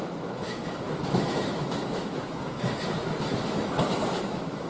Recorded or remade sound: remade